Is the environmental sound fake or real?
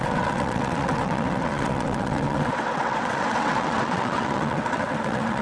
fake